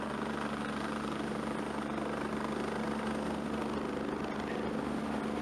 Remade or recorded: recorded